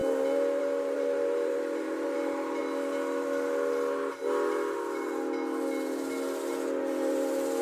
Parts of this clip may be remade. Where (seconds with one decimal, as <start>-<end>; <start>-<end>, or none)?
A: 0.6-2.6